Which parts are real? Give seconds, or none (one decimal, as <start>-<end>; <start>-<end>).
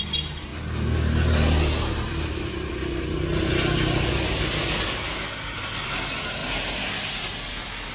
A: 0.0-7.9